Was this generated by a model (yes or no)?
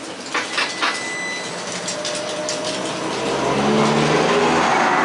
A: no